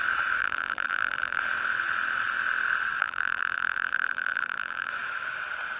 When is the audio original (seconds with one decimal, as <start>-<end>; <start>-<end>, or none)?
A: 0.0-0.4; 1.4-3.0; 4.9-5.8